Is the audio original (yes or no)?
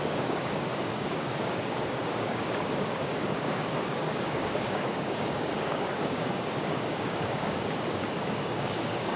no